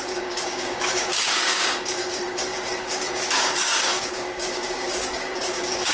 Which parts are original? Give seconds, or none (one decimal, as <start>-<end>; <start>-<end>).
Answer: none